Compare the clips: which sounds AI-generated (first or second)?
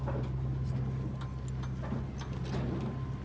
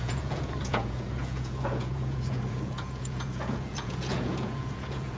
second